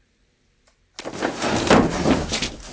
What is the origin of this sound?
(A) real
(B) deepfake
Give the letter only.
A